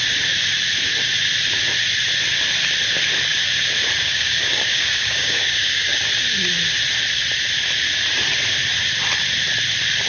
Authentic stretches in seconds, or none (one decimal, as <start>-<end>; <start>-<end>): 0.0-4.0; 6.0-10.1